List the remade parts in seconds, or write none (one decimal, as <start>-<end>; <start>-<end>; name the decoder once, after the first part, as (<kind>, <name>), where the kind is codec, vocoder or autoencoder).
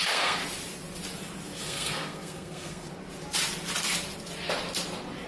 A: 0.0-0.4 (codec, SNAC); 1.6-2.9